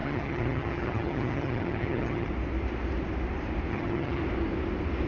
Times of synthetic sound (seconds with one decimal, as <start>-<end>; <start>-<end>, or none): 0.0-2.3; 3.7-4.2